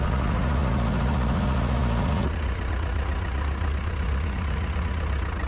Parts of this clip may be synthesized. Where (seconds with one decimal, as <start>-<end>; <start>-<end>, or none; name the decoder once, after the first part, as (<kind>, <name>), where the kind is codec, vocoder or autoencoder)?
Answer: 0.0-5.5 (vocoder, Vocos)